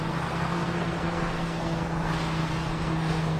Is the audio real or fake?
fake